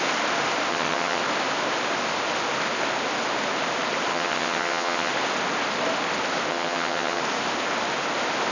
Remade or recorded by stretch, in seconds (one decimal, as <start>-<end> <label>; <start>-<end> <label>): 0.0-0.7 recorded; 0.7-1.2 remade; 1.2-4.1 recorded; 4.1-5.1 remade; 5.1-6.5 recorded; 6.5-7.2 remade; 7.2-8.5 recorded